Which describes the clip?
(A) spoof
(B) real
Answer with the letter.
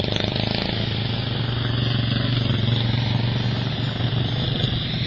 B